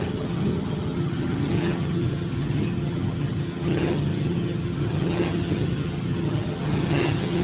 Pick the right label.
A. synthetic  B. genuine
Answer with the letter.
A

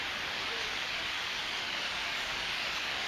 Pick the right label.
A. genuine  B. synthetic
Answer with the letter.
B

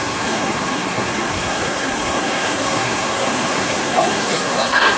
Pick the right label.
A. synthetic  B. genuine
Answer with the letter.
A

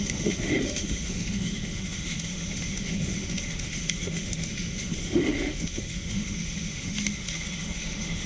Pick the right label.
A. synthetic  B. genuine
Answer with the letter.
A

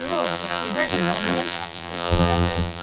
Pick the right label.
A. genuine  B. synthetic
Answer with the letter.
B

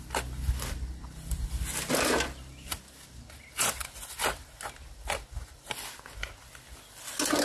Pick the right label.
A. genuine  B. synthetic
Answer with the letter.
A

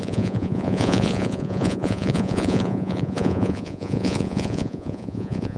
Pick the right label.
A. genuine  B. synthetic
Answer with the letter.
B